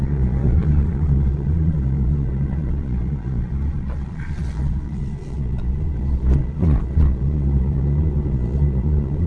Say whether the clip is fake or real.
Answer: fake